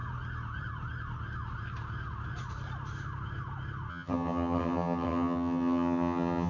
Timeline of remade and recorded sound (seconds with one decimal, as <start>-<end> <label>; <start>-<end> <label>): 0.0-3.9 recorded; 3.9-6.5 remade

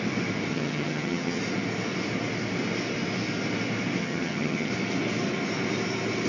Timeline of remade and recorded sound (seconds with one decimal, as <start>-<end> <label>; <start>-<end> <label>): 0.0-0.5 recorded; 0.5-1.4 remade; 1.4-4.0 recorded; 4.0-4.7 remade; 4.7-6.3 recorded

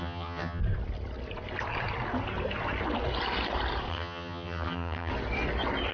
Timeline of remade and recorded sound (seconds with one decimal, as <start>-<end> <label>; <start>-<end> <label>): 0.0-0.6 remade; 0.6-3.9 recorded; 3.9-5.1 remade; 5.1-5.9 recorded

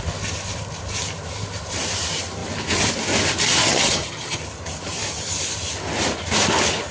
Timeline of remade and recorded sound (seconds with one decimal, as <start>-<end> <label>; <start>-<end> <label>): 0.0-3.6 recorded; 3.6-4.4 remade; 4.4-6.9 recorded

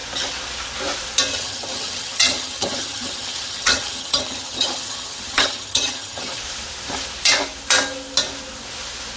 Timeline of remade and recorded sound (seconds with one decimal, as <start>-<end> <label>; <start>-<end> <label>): 0.0-1.3 recorded; 1.3-6.4 remade; 6.4-9.2 recorded

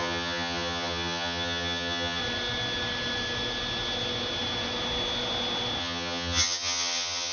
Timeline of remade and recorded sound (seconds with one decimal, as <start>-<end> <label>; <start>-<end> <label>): 0.0-2.2 remade; 2.2-5.8 recorded; 5.8-7.3 remade

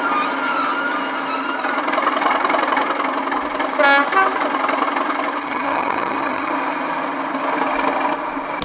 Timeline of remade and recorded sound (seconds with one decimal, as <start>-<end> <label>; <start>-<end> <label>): 0.0-5.4 recorded; 5.4-6.5 remade; 6.5-8.6 recorded

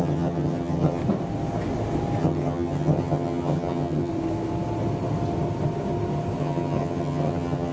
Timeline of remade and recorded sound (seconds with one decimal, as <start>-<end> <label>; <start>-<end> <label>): 0.0-1.0 remade; 1.0-2.2 recorded; 2.2-4.1 remade; 4.1-6.4 recorded; 6.4-7.7 remade